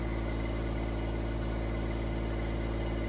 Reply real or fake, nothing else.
real